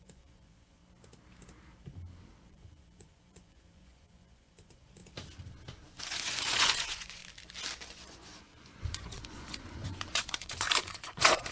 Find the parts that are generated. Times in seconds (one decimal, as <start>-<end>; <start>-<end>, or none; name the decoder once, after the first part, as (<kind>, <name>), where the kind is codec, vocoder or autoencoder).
0.0-0.8 (vocoder, Vocos); 2.4-5.0; 6.0-7.2; 7.9-11.5